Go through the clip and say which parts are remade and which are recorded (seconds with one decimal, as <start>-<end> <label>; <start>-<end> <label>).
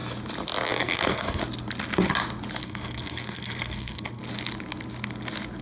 0.0-0.8 recorded; 0.8-1.4 remade; 1.4-2.6 recorded; 2.6-4.2 remade; 4.2-5.6 recorded